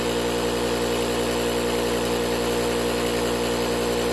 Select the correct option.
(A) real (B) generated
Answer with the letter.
A